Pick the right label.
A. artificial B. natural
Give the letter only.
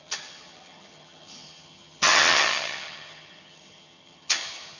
A